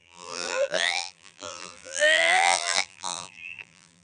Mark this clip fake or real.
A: fake